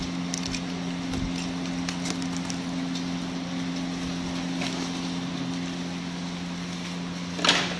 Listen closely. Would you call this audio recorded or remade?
recorded